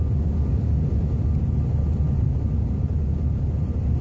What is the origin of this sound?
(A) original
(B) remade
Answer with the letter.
A